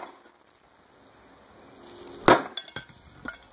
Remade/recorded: recorded